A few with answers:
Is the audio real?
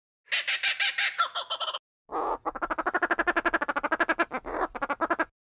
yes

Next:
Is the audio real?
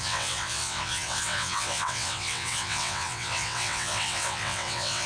no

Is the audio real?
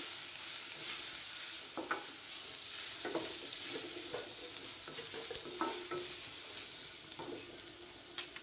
yes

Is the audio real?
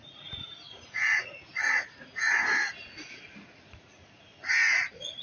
no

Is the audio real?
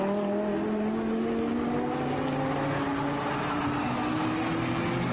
yes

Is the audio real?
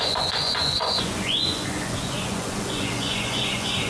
no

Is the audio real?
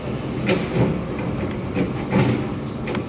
yes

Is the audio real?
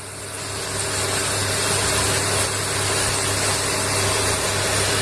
yes